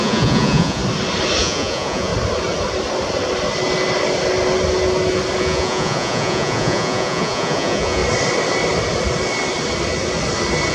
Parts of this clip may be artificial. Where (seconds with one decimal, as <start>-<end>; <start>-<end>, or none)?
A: 0.0-0.8; 1.4-2.1; 5.4-8.0